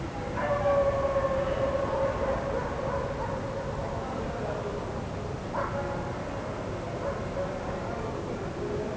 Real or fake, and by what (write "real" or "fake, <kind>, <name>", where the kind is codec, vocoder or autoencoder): real